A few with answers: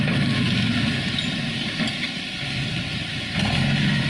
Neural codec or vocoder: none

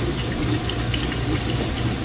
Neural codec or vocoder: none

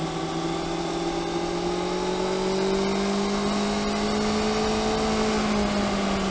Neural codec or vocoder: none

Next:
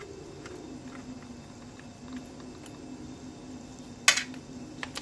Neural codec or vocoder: none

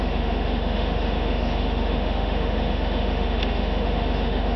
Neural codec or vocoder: autoencoder, DAC-VAE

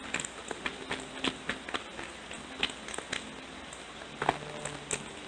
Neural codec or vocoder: none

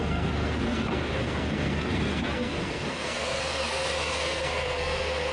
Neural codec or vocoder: codec, SNAC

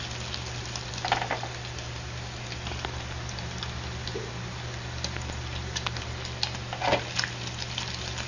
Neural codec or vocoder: none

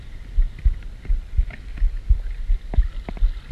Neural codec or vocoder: none